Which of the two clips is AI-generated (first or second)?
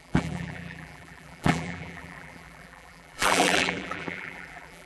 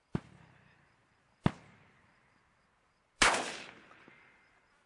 first